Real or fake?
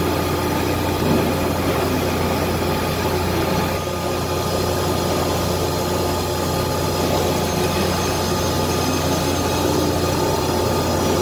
real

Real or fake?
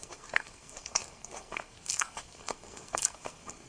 fake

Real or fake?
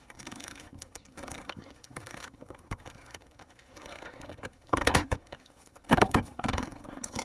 fake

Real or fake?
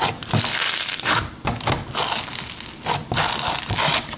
fake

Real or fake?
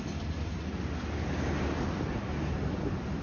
real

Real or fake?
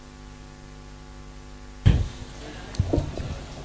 real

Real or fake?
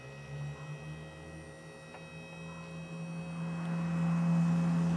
real